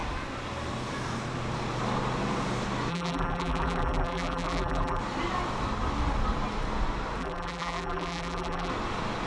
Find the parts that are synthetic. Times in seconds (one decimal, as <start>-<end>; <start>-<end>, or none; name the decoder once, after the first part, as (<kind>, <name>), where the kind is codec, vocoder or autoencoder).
2.9-5.0 (vocoder, BigVGAN v2); 7.2-8.7